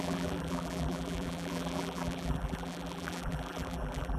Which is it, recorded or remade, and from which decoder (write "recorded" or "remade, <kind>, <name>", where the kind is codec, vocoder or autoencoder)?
remade, vocoder, BigVGAN v2